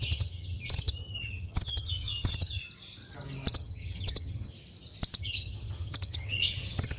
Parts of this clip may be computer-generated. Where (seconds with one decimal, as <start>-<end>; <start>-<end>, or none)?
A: 0.0-2.6; 3.5-4.5; 5.2-7.0